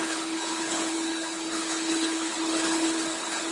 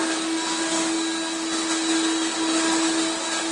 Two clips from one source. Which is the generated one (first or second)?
first